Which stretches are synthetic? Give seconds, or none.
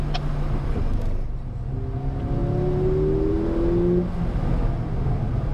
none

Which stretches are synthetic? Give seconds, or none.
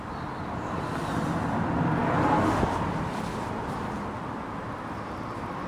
none